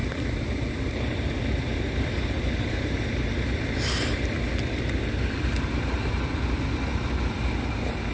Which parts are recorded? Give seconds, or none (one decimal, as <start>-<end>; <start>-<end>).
0.0-8.1